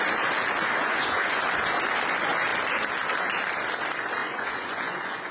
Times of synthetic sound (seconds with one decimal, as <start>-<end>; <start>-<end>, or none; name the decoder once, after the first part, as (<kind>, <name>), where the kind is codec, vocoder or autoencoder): 0.8-1.4 (vocoder, Vocos); 4.2-5.3